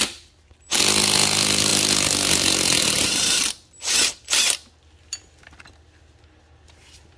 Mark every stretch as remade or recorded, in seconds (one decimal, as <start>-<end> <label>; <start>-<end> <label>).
0.0-7.2 recorded